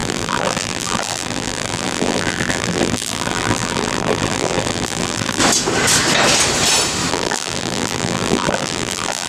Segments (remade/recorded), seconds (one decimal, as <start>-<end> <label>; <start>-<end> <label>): 0.0-5.4 remade; 5.4-7.1 recorded; 7.1-9.3 remade